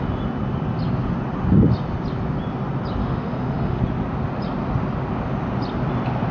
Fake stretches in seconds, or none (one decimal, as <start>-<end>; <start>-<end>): 3.0-3.8